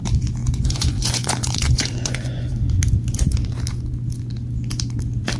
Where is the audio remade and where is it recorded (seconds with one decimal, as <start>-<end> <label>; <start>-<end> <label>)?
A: 0.0-0.4 recorded; 0.4-2.5 remade; 2.5-5.4 recorded